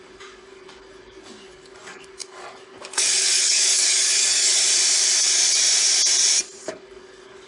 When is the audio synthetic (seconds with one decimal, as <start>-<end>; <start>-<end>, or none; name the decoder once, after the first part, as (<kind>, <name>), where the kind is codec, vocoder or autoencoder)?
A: 0.0-4.6 (codec, DAC); 6.6-7.5